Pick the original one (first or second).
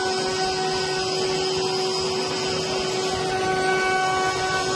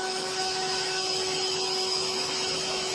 first